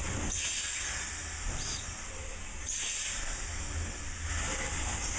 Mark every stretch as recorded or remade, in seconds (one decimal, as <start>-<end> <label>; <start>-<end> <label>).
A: 0.0-5.2 recorded